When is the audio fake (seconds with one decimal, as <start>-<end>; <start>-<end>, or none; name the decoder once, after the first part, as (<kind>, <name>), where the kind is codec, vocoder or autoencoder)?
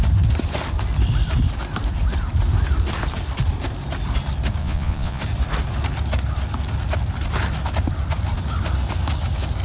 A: 4.6-5.2 (vocoder, Vocos)